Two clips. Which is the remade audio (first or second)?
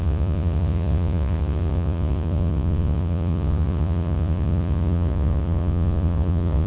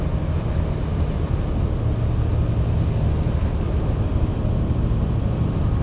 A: first